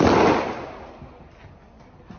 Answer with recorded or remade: recorded